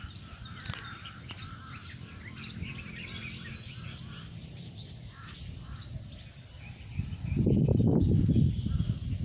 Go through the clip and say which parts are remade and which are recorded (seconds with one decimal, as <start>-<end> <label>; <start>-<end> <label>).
0.0-7.7 recorded; 7.7-8.3 remade; 8.3-9.2 recorded